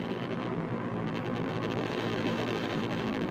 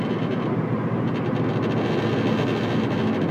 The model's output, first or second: first